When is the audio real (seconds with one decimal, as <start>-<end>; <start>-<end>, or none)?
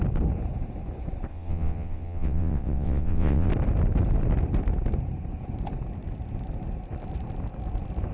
0.0-1.3; 3.5-8.1